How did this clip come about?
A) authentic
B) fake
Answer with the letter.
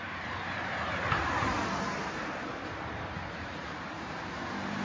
B